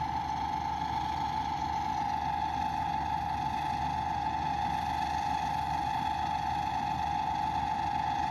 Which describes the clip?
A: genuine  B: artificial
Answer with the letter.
A